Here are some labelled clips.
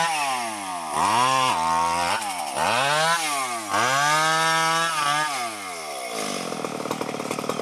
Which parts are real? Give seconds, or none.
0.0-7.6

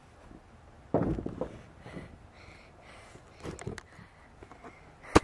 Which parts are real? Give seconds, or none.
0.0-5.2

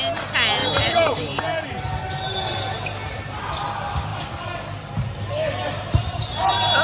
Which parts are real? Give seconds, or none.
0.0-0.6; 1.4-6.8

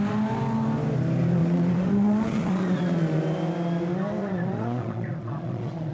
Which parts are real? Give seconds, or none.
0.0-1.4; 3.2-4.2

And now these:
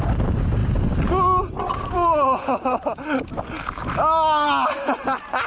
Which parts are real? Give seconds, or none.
0.0-5.5

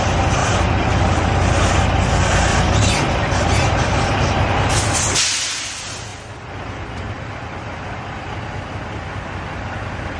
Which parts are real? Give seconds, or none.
0.0-0.4; 1.7-2.5; 4.7-10.2

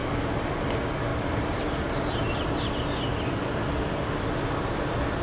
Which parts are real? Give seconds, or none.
0.5-1.1; 2.1-5.2